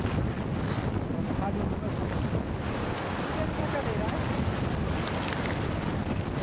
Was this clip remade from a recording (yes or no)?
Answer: no